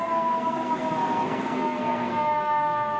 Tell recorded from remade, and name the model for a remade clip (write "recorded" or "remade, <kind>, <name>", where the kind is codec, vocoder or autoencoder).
remade, codec, SNAC